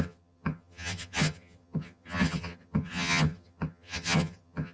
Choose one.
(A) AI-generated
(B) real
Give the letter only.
A